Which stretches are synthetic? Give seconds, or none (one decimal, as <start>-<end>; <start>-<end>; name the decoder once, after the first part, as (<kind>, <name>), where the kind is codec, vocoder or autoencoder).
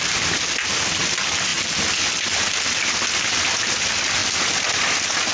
none